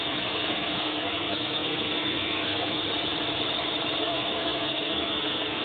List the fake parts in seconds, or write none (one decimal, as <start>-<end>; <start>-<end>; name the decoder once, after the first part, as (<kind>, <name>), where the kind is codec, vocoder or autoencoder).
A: 0.0-2.8 (codec, SNAC); 4.0-5.6